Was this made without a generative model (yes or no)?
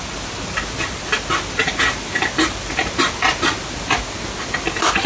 yes